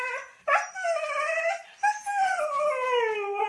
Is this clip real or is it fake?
real